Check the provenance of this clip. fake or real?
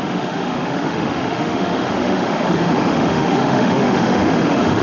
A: fake